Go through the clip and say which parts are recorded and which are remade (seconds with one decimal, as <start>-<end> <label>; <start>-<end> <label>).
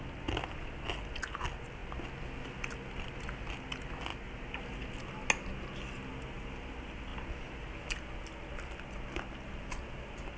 0.0-10.4 recorded